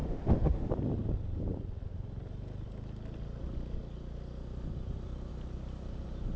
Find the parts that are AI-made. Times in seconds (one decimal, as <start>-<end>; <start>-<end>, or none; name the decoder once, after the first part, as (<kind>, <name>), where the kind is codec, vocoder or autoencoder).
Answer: 0.0-0.7 (autoencoder, DAC-VAE)

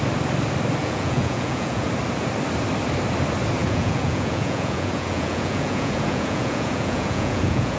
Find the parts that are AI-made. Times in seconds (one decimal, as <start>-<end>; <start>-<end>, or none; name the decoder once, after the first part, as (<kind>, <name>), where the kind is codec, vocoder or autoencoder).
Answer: 0.8-1.9 (vocoder, Vocos); 3.6-7.8